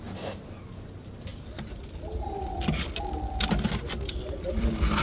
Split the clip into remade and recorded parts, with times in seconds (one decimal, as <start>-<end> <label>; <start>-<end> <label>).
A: 0.0-5.0 recorded